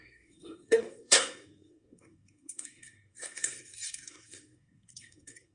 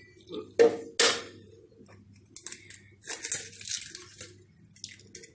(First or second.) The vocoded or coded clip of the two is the first